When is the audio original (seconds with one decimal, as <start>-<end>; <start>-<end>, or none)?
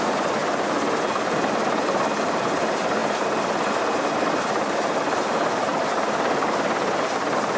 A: 5.7-7.6